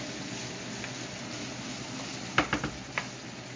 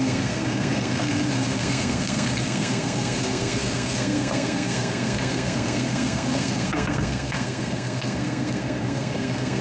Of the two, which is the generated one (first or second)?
second